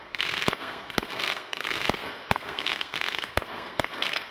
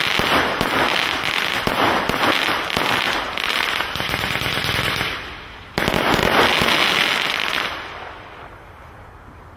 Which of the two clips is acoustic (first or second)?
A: second